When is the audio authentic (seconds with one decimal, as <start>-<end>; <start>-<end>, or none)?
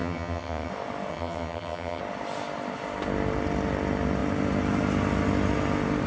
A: 0.7-1.1; 2.0-6.1